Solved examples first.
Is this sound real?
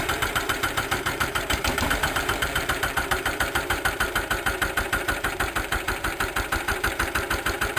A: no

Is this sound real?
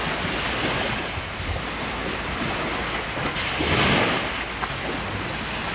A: yes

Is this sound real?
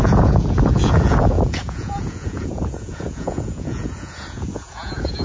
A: no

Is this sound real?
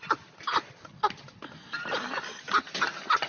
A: yes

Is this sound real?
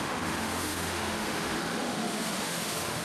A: no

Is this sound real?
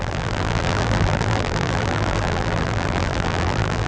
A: no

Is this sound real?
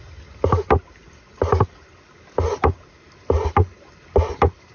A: yes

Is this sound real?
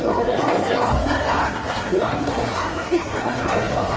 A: no